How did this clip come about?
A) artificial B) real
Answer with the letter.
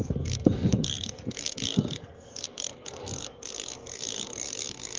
A